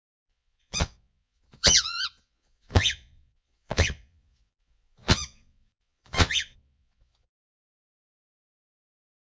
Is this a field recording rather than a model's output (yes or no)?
no